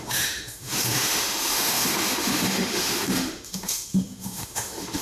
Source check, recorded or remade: remade